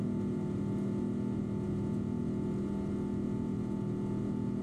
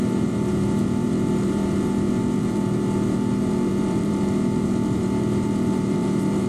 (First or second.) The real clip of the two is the first